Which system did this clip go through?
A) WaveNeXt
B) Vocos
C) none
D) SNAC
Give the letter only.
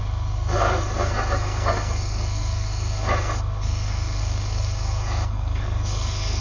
D